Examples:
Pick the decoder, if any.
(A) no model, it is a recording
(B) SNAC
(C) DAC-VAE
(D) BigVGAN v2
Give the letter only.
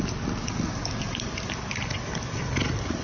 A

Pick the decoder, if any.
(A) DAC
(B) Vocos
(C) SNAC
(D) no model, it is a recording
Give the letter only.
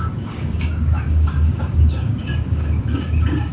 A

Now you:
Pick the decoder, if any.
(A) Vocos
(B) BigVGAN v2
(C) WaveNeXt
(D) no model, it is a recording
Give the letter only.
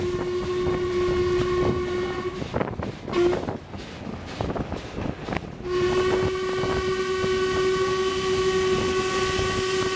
D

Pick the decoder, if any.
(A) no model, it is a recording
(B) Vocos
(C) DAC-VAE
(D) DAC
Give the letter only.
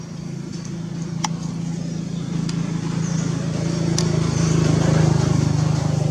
A